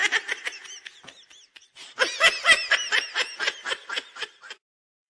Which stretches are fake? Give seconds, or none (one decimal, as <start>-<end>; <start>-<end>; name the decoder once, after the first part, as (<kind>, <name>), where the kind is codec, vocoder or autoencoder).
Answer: 3.1-5.1 (vocoder, BigVGAN v2)